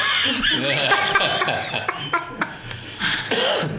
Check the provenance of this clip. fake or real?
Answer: real